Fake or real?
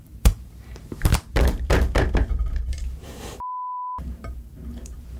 fake